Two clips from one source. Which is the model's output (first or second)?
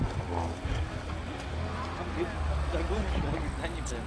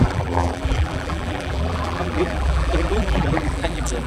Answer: second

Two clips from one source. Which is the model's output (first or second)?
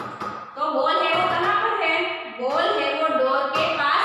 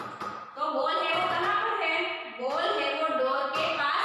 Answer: second